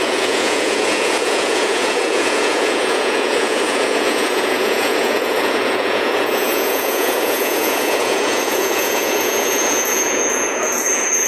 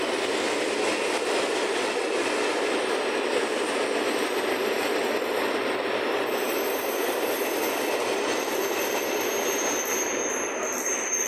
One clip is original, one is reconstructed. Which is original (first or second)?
second